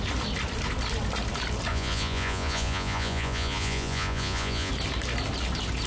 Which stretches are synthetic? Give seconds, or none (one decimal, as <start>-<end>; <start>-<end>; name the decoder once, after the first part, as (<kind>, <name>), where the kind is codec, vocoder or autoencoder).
1.7-4.7 (vocoder, Vocos)